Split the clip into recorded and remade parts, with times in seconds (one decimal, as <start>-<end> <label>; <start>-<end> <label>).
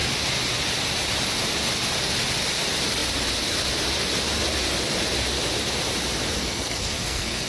0.0-6.4 recorded; 6.4-7.5 remade